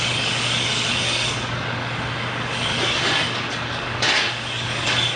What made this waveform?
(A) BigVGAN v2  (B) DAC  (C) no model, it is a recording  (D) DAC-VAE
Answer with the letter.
B